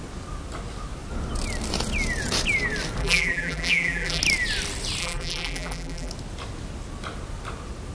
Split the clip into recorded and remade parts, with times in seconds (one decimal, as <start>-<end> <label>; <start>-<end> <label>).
0.0-3.0 recorded; 3.0-4.2 remade; 4.2-5.0 recorded; 5.0-6.1 remade; 6.1-7.9 recorded